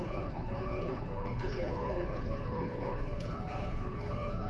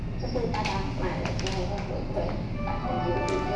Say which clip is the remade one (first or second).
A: first